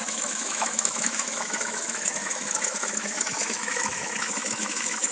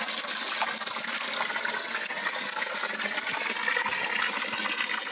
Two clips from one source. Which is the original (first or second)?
second